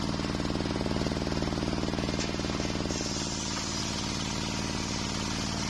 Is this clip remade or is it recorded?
recorded